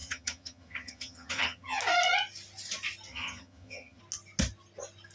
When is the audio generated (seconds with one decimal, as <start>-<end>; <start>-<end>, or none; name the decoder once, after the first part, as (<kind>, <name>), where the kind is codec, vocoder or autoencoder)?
0.0-1.8 (vocoder, HiFi-GAN); 3.1-4.0